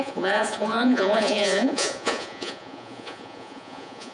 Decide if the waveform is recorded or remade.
remade